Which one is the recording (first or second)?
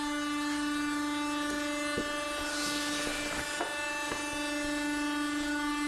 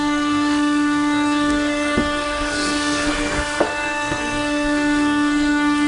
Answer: first